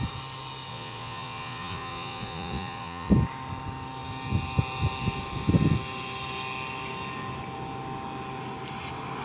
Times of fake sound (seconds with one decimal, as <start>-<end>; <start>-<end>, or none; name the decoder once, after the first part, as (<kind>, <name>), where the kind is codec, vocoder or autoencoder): 0.7-3.1 (vocoder, Vocos)